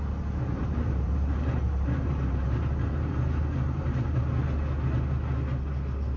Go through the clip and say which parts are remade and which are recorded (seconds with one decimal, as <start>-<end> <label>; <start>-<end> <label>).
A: 0.0-0.6 recorded; 0.6-4.3 remade; 4.3-6.2 recorded